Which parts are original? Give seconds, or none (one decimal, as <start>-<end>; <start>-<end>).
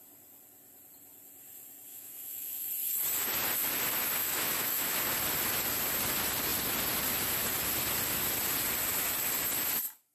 0.0-1.9; 2.7-4.2; 5.0-10.1